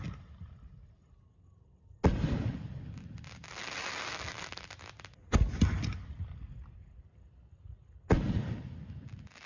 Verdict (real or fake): real